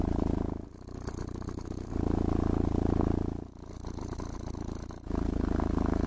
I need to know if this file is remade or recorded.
recorded